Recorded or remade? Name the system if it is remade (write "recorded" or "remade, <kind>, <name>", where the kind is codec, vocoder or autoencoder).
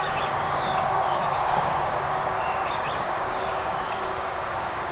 remade, codec, DAC